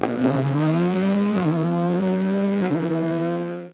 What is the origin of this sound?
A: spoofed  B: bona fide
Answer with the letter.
A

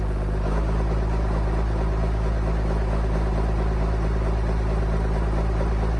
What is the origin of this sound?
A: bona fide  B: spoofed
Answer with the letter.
A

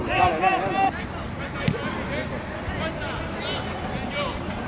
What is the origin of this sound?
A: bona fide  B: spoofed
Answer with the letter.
A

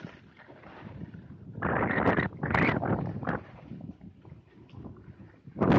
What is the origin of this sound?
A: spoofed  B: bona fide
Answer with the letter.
B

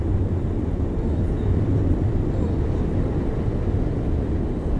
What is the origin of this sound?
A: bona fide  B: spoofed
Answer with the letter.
A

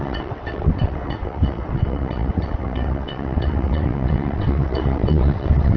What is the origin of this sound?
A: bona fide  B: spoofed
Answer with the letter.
B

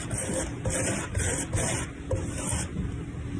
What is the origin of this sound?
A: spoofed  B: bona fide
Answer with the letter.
B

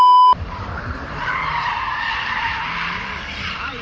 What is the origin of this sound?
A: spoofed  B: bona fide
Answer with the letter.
A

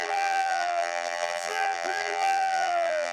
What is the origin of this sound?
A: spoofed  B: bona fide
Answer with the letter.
A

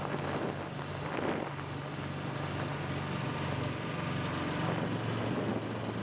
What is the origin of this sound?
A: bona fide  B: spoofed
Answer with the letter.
A